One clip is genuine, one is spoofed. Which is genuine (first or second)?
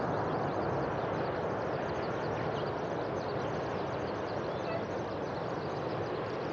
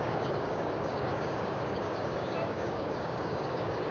first